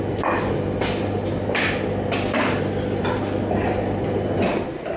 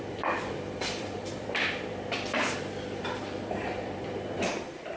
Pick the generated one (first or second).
second